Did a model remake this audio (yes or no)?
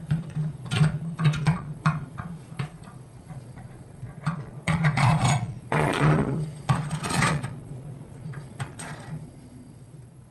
yes